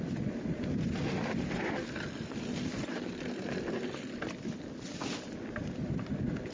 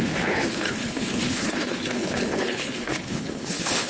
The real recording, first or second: first